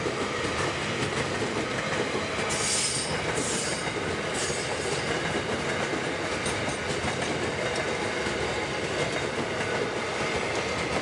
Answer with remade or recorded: recorded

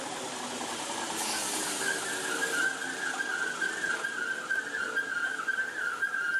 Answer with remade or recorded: recorded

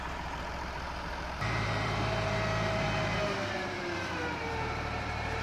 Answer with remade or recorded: remade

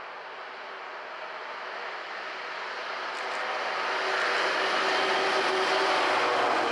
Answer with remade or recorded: recorded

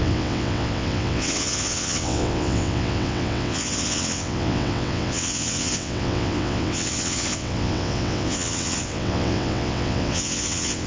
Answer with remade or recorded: remade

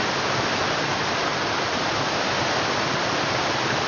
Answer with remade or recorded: recorded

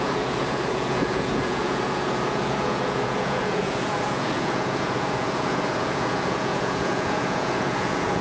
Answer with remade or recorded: remade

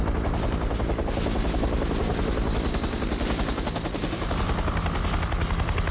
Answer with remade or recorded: recorded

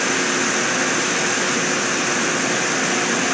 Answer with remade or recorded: recorded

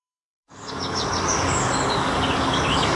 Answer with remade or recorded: remade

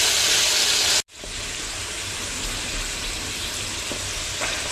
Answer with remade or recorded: recorded